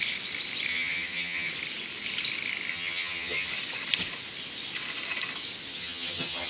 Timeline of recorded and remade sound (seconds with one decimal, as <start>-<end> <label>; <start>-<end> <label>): 0.0-0.7 recorded; 0.7-1.5 remade; 1.5-2.7 recorded; 2.7-3.5 remade; 3.5-5.7 recorded; 5.7-6.5 remade